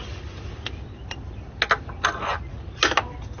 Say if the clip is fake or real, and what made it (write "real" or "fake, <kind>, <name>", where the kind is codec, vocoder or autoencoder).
real